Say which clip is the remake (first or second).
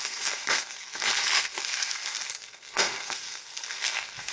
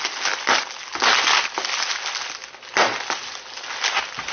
first